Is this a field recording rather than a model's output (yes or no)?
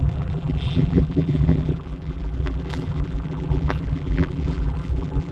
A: no